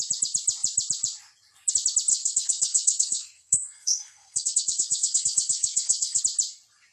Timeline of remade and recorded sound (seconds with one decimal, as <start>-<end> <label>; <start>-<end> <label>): 0.0-2.1 recorded; 2.1-6.2 remade; 6.2-6.9 recorded